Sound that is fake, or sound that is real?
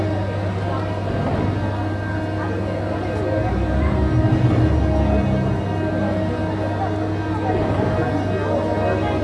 real